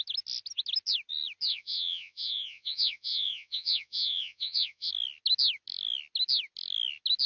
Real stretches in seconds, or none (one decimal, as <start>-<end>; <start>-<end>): 0.0-1.5; 4.9-7.3